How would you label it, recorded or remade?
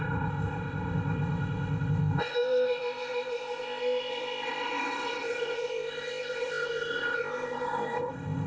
remade